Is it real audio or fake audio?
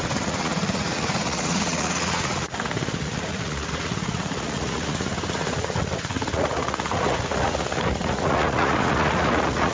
fake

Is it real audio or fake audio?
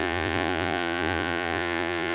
fake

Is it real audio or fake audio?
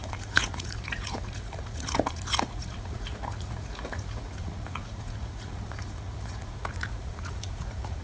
fake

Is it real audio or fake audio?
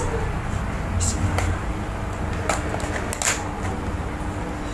real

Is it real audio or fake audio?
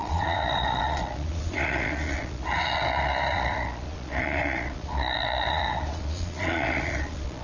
fake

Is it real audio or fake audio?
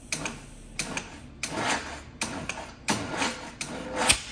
real